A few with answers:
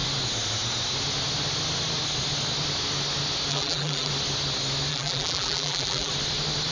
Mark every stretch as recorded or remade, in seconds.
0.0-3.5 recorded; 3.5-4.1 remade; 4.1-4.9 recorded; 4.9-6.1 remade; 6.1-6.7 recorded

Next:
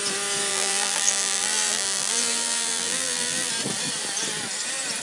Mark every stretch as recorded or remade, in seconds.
0.0-0.5 recorded; 0.5-3.5 remade; 3.5-5.0 recorded

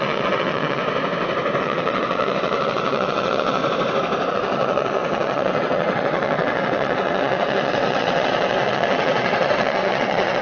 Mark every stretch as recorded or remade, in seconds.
0.0-0.8 remade; 0.8-1.6 recorded; 1.6-3.6 remade; 3.6-4.3 recorded; 4.3-10.4 remade

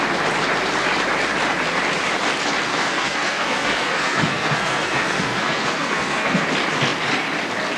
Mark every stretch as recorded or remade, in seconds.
0.0-2.7 recorded; 2.7-6.5 remade; 6.5-7.8 recorded

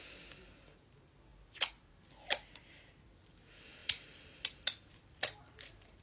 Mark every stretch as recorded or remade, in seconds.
0.0-6.0 recorded

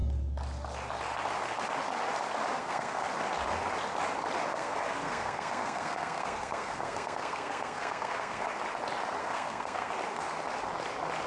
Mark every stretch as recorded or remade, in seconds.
0.0-2.6 recorded; 2.6-3.1 remade; 3.1-4.5 recorded; 4.5-8.4 remade; 8.4-9.2 recorded; 9.2-9.9 remade; 9.9-11.3 recorded